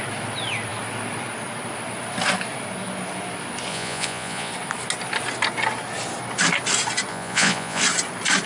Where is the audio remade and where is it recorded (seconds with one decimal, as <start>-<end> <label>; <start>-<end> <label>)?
0.0-3.7 recorded; 3.7-4.5 remade; 4.5-7.1 recorded; 7.1-7.8 remade; 7.8-8.5 recorded